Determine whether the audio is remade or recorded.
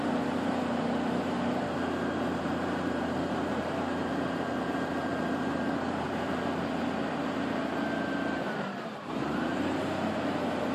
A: remade